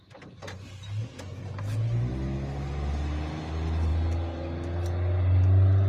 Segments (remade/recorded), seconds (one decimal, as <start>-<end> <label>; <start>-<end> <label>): 0.0-5.9 recorded